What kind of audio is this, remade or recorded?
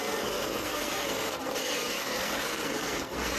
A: remade